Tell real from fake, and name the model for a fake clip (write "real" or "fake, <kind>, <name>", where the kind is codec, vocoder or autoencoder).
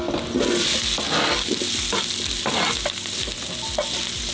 real